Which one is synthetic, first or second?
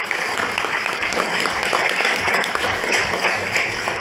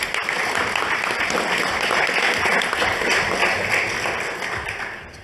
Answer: first